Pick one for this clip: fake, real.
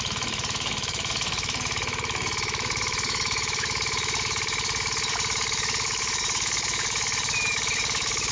fake